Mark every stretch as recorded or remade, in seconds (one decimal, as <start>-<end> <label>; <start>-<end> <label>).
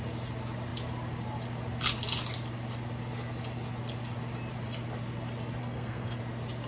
0.0-5.6 recorded; 5.6-6.2 remade; 6.2-6.7 recorded